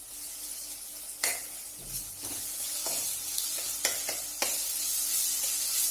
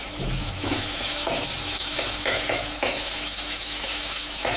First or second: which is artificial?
second